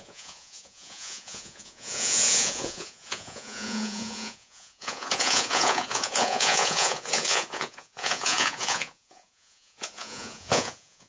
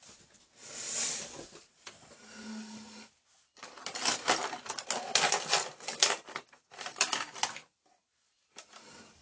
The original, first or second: second